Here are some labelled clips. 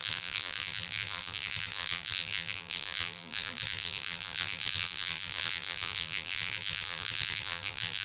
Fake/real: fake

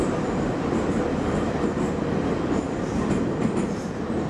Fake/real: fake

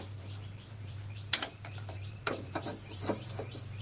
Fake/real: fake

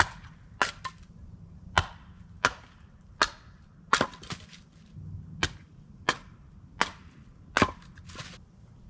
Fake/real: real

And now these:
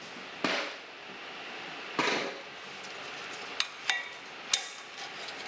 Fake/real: real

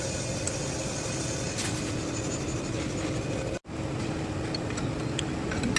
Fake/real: real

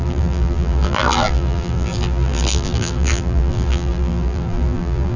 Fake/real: fake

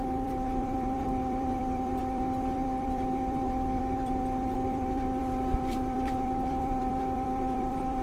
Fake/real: fake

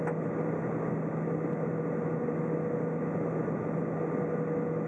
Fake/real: real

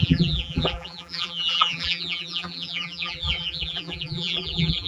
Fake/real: fake